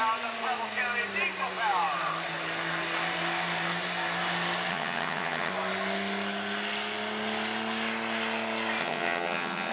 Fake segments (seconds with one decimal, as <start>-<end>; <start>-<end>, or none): 4.7-5.5; 8.8-9.7